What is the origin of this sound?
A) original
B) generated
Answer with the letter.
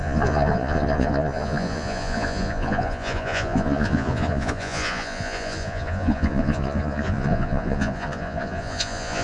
B